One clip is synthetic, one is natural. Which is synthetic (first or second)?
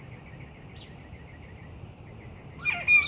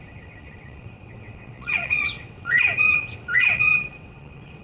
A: second